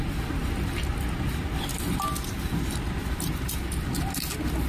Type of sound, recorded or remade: recorded